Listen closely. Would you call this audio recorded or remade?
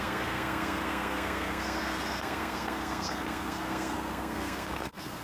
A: remade